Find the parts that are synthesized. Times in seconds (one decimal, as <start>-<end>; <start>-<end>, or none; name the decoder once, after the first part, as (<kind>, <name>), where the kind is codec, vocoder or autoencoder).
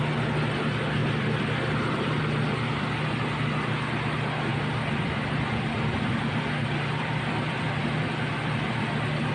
1.0-2.2 (vocoder, BigVGAN v2); 4.5-8.7